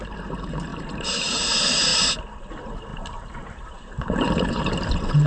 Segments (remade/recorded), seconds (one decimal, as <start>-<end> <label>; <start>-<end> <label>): 0.0-1.9 remade; 1.9-2.5 recorded; 2.5-5.3 remade